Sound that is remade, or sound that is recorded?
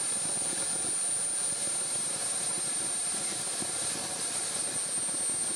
recorded